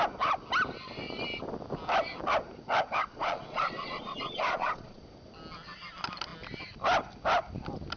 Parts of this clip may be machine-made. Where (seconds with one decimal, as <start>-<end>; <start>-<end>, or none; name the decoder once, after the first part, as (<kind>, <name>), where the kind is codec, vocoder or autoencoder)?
3.1-5.0 (vocoder, Vocos)